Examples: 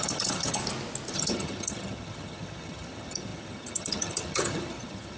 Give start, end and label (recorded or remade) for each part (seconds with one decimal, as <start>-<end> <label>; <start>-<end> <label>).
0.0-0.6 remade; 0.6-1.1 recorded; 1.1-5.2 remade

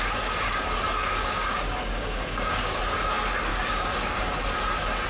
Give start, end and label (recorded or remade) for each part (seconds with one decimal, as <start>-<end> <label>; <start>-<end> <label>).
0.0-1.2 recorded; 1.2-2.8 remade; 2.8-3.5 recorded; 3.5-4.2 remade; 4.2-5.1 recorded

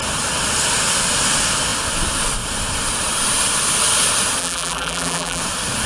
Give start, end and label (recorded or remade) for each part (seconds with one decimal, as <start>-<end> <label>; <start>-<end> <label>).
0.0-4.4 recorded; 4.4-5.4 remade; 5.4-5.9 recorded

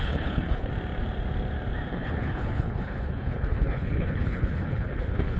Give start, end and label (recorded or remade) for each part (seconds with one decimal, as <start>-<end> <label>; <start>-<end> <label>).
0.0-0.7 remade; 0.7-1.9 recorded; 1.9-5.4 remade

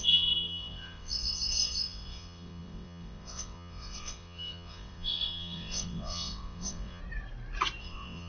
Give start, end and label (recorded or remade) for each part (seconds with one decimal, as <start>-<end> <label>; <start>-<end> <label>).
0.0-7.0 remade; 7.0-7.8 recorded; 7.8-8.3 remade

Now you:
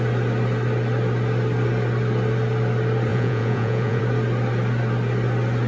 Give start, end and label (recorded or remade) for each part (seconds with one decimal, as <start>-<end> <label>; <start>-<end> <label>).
0.0-3.1 recorded; 3.1-4.0 remade; 4.0-5.7 recorded

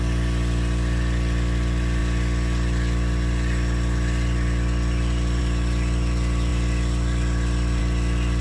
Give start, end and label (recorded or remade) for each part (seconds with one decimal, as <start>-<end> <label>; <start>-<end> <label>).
0.0-8.4 recorded